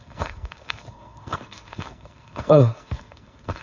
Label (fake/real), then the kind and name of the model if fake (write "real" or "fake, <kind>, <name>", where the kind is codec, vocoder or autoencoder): fake, codec, SNAC